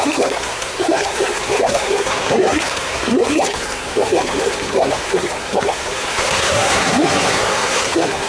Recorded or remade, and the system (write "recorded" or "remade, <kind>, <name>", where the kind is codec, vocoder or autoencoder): remade, codec, SNAC